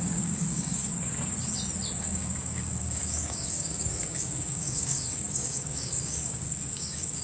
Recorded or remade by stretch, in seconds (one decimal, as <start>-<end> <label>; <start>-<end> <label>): 0.0-0.9 remade; 0.9-2.0 recorded; 2.0-7.2 remade